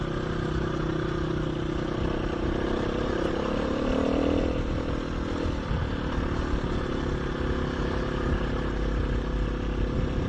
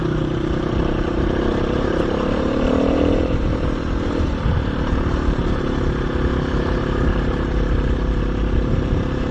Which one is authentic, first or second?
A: first